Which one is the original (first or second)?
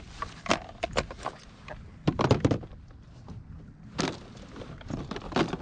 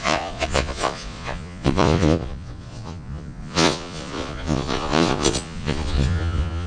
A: first